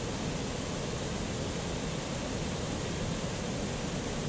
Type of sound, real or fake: real